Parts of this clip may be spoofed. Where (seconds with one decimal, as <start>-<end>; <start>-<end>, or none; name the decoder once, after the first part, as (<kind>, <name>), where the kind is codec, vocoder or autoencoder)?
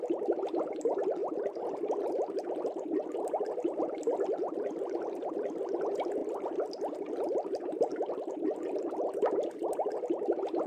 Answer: none